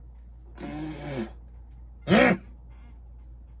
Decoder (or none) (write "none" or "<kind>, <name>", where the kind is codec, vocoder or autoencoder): none